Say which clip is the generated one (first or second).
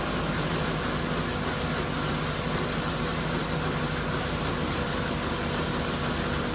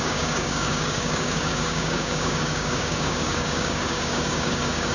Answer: second